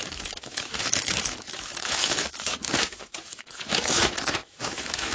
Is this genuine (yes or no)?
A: no